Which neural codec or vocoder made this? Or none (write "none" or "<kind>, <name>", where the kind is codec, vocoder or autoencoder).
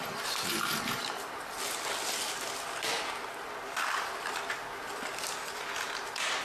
none